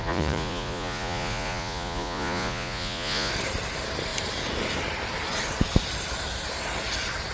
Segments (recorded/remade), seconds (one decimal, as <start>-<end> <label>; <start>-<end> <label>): 0.0-3.3 remade; 3.3-7.3 recorded